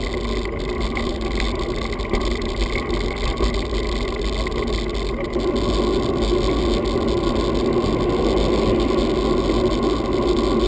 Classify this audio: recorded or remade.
recorded